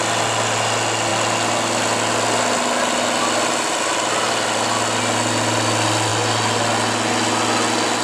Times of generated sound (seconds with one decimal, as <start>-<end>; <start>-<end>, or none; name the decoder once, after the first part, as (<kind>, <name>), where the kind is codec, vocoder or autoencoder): none

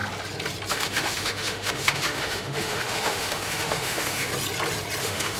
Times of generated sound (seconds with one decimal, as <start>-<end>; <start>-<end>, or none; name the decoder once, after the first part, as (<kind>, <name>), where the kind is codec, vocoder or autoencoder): 0.7-4.3 (autoencoder, DAC-VAE); 5.0-5.4

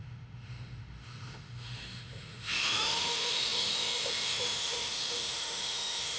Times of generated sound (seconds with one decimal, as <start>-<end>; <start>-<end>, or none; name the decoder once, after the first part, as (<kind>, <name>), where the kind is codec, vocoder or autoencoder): 0.0-6.2 (autoencoder, DAC-VAE)

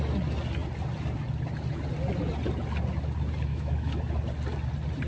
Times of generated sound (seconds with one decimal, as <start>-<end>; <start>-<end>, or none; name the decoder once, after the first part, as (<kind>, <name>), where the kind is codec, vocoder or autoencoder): 3.5-4.0 (autoencoder, DAC-VAE)

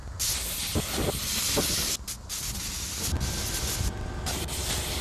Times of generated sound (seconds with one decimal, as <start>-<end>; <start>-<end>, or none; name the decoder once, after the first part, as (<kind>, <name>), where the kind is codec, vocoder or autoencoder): none

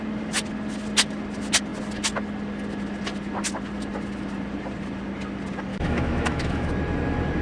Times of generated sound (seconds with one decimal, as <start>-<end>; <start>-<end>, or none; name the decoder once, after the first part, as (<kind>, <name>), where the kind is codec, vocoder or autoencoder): 5.7-6.7 (autoencoder, DAC-VAE)